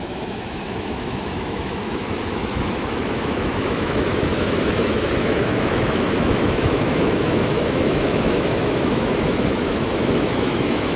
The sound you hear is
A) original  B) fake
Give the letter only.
B